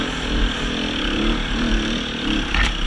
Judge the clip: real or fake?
fake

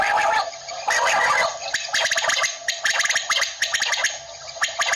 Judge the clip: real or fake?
real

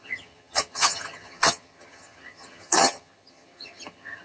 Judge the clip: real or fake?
fake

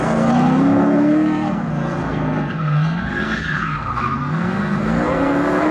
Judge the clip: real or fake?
fake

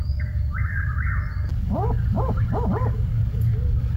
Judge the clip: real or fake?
fake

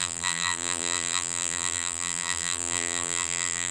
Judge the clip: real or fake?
fake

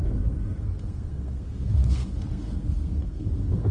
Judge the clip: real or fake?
fake